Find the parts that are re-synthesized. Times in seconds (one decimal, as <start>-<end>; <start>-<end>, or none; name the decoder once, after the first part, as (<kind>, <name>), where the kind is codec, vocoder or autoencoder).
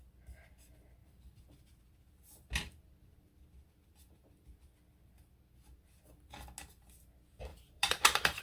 1.0-1.8 (vocoder, BigVGAN v2); 7.5-8.4